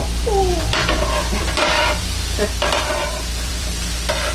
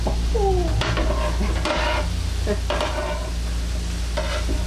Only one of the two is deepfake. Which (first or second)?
first